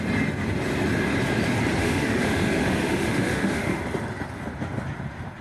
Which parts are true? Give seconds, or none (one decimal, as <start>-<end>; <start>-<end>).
0.0-1.8; 3.8-5.4